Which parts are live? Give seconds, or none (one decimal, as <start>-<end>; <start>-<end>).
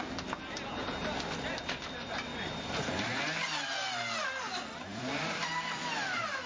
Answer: 0.0-2.3; 2.9-4.9; 5.5-6.5